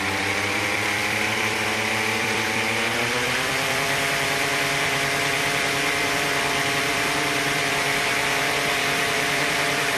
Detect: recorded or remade remade